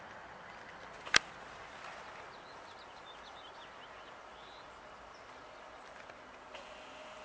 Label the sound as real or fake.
real